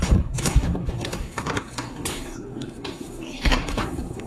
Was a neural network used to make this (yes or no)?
yes